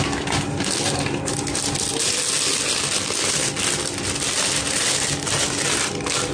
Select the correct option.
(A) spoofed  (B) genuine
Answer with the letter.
B